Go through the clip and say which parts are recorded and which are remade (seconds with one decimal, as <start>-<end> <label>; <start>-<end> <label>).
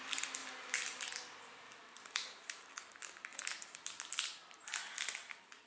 0.0-1.8 recorded; 1.8-2.7 remade; 2.7-5.7 recorded